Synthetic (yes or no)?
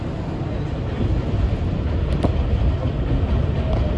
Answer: no